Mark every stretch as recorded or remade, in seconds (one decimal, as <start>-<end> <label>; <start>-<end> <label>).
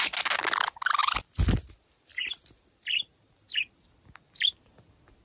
0.0-1.0 recorded; 1.0-1.7 remade; 1.7-5.2 recorded